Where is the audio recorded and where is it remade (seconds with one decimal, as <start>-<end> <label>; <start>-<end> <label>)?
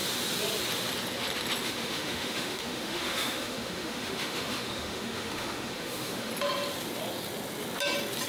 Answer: 0.0-1.6 recorded; 1.6-6.3 remade; 6.3-8.3 recorded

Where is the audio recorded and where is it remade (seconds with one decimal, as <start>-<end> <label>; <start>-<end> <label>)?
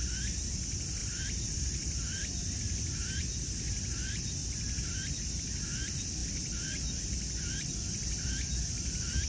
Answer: 0.0-1.0 recorded; 1.0-5.1 remade; 5.1-6.2 recorded; 6.2-7.7 remade; 7.7-9.3 recorded